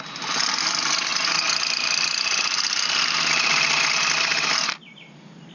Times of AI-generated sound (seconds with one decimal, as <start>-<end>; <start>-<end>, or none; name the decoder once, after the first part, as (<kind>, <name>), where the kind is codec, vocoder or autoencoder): none